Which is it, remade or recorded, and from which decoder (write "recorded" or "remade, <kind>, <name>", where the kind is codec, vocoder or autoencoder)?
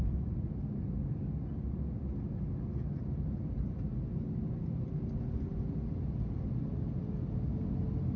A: recorded